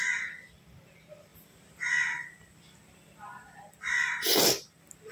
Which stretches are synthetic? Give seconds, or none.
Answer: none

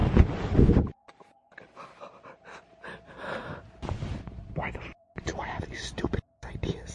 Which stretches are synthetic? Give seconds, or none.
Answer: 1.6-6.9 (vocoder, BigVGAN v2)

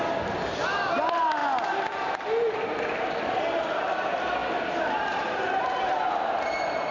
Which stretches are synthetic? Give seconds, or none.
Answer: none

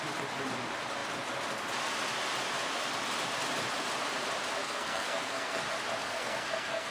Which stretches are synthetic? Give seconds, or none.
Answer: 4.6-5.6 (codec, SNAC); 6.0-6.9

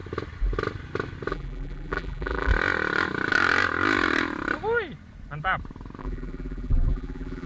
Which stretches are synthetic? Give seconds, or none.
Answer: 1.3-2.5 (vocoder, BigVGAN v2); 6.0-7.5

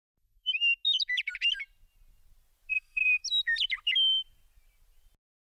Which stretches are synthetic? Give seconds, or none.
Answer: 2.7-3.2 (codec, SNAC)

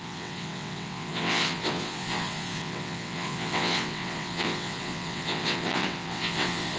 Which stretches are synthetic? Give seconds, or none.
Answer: 0.0-6.8 (vocoder, WaveNeXt)

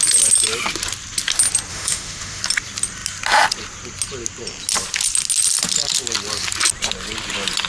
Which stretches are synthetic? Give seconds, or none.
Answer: 1.7-2.4 (autoencoder, DAC-VAE)